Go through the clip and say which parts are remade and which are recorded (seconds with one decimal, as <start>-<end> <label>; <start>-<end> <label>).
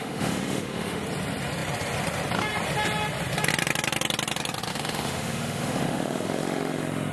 0.0-1.0 remade; 1.0-4.7 recorded; 4.7-7.1 remade